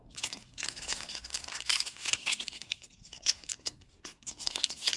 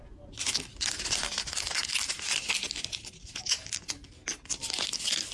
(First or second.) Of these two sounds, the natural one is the second